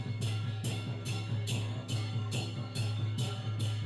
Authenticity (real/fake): fake